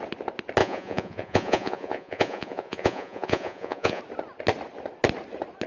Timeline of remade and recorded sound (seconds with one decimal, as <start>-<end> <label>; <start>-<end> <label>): 0.0-0.6 recorded; 0.6-4.0 remade; 4.0-5.7 recorded